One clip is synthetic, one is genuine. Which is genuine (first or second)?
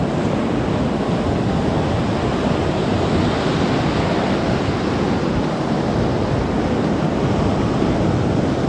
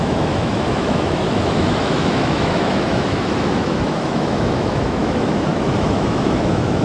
first